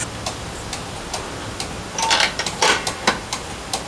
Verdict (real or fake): real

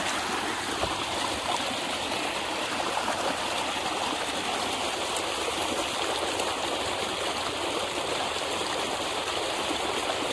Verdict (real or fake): real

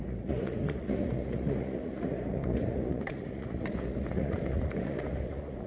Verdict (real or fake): fake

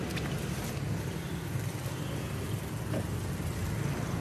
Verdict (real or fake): real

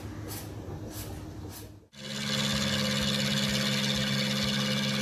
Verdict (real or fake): real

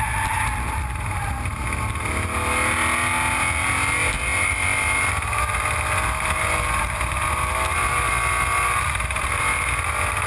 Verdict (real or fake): real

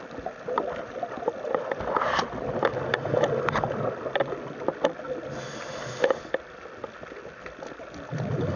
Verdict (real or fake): real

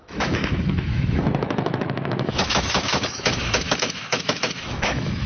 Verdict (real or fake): fake